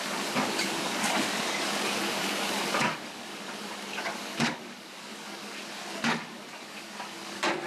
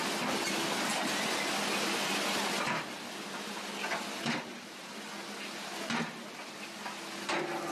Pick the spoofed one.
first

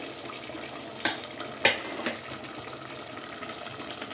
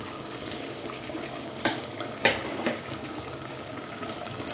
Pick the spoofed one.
second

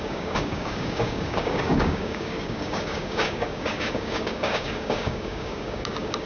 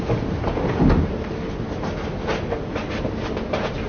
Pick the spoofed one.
first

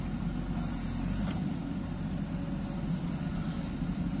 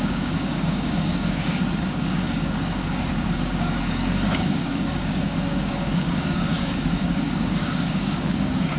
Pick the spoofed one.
second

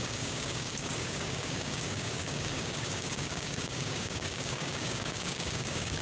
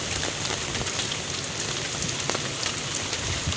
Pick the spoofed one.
first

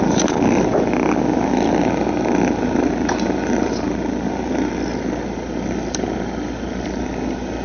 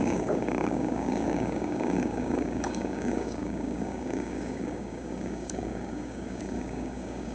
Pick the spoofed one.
second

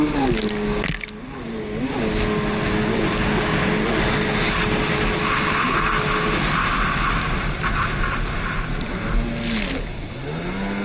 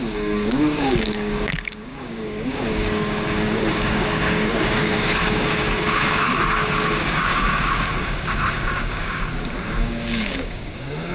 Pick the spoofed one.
second